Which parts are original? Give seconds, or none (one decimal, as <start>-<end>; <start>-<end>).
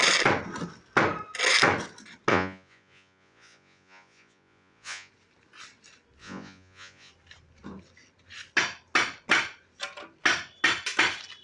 0.0-2.3; 5.1-6.2; 7.1-11.4